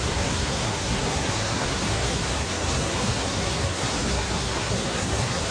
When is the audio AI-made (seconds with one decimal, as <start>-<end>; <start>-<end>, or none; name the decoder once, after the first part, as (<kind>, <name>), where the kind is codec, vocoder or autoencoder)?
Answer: 0.0-5.5 (codec, SNAC)